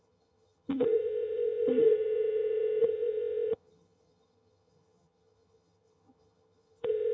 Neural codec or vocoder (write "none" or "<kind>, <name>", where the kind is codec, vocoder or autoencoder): vocoder, HiFi-GAN